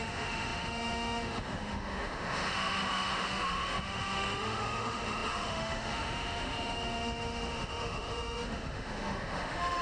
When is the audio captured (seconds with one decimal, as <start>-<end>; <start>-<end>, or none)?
none